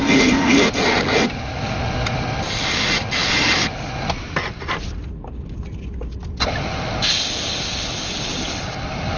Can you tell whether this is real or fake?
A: real